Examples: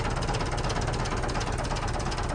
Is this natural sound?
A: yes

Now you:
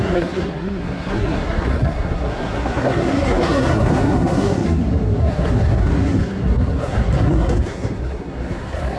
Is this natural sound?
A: no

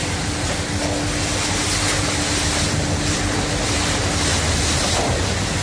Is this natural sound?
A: yes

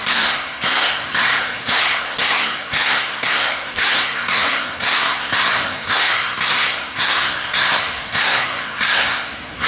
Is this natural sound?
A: no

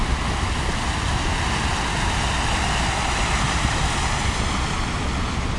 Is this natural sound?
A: yes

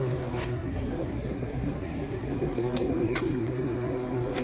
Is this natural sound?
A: no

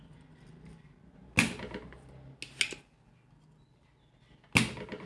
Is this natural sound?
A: yes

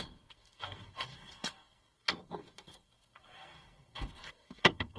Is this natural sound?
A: no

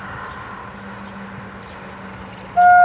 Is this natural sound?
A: yes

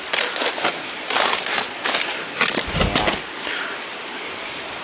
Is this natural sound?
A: yes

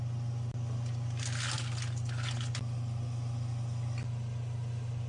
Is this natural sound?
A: yes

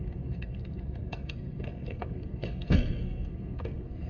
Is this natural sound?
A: no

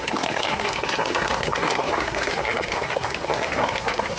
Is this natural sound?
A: no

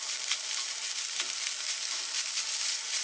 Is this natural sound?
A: yes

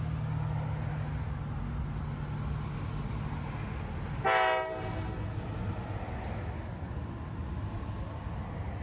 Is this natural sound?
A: yes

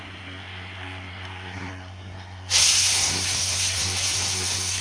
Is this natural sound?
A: no